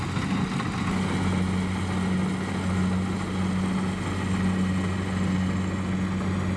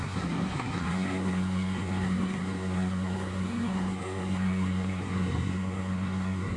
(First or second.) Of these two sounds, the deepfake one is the second